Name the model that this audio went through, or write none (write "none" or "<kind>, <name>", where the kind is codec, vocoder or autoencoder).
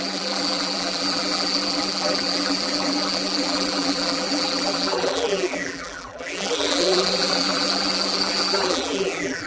vocoder, BigVGAN v2